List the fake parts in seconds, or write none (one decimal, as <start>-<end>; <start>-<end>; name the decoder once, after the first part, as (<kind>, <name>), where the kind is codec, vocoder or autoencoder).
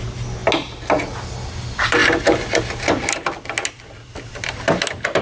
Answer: none